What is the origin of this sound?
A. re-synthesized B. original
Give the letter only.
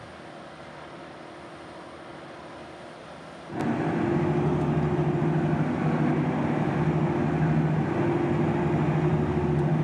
B